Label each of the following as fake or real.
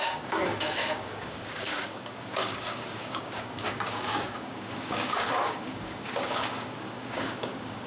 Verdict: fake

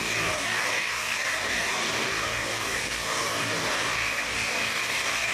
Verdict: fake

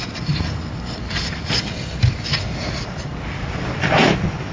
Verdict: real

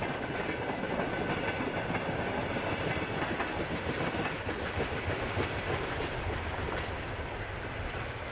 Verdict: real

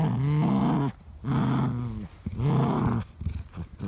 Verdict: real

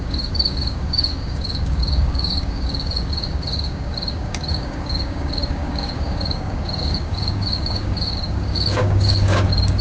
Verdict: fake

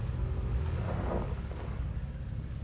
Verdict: fake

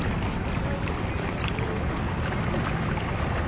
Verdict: real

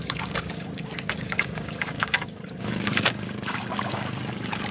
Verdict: fake